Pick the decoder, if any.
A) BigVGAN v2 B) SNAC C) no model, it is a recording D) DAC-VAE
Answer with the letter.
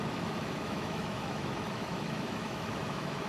D